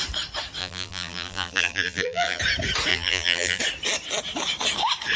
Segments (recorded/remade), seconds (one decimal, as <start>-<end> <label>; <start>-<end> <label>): 0.0-0.6 recorded; 0.6-2.4 remade; 2.4-2.9 recorded; 2.9-3.6 remade; 3.6-5.2 recorded